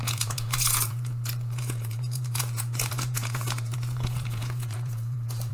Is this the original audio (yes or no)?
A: no